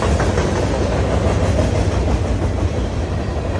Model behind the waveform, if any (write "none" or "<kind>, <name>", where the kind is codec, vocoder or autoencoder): none